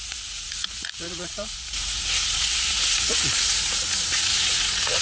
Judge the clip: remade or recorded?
remade